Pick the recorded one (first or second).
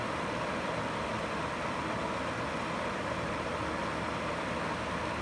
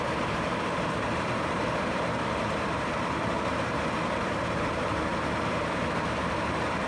first